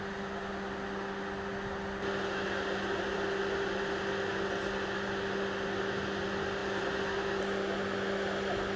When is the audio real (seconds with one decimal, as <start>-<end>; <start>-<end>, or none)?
0.0-8.8